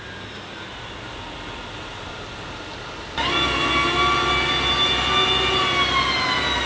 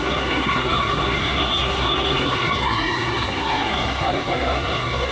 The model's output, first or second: second